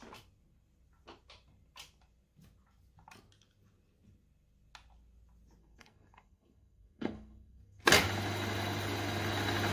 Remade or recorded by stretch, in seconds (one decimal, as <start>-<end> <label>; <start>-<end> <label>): 0.0-5.6 recorded; 5.6-7.8 remade; 7.8-9.7 recorded